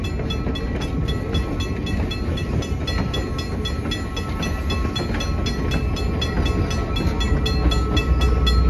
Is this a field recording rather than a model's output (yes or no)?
yes